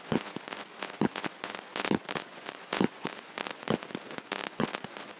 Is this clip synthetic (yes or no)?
yes